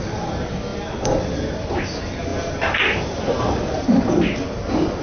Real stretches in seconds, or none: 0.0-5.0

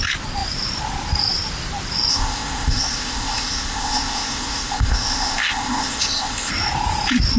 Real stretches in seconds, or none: 0.0-2.1; 6.5-7.4

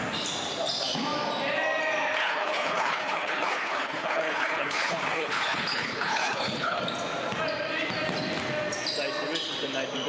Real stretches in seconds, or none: 0.0-2.2; 6.8-10.1

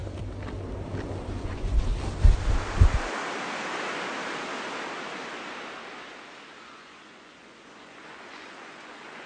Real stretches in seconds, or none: 0.0-1.4; 1.9-6.6

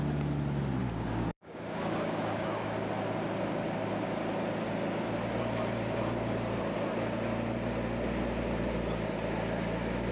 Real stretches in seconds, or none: 0.0-0.8; 2.9-10.1